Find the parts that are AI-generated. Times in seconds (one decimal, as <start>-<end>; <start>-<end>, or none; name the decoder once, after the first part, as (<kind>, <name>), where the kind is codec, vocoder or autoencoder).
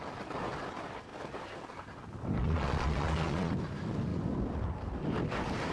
2.4-3.5 (vocoder, Vocos)